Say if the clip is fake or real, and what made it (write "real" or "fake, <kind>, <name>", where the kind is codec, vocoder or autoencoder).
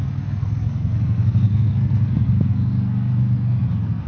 fake, codec, SNAC